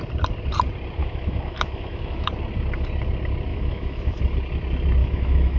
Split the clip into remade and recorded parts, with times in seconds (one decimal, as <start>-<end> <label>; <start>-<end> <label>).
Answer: 0.0-1.0 recorded; 1.0-2.3 remade; 2.3-3.5 recorded; 3.5-4.2 remade; 4.2-5.0 recorded; 5.0-5.6 remade